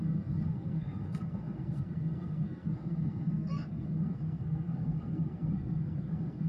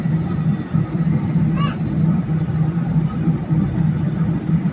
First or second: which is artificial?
first